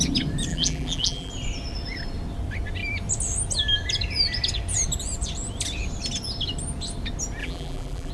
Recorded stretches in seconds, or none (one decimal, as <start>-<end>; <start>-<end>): 0.0-0.5; 1.3-7.4